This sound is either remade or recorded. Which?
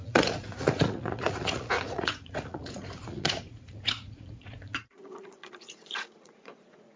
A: remade